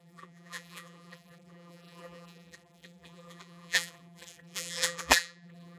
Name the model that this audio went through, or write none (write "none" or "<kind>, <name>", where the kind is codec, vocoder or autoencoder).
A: vocoder, BigVGAN v2